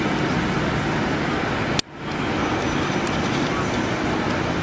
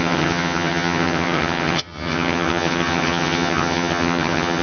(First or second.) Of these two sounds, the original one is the first